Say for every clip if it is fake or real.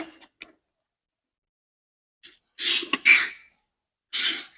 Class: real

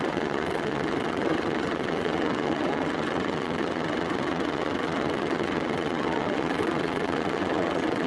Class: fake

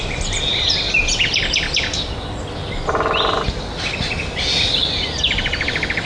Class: real